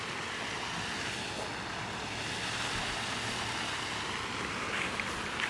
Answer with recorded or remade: recorded